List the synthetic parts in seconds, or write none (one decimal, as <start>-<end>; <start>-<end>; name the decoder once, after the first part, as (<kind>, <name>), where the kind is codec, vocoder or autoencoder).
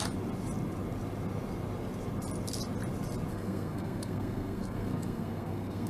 3.3-5.9 (codec, SNAC)